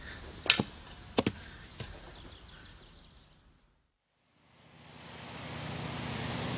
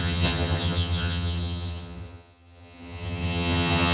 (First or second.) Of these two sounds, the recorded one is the first